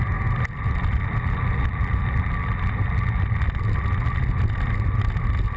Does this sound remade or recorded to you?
recorded